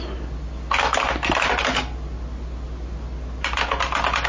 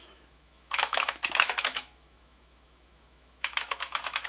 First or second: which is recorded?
first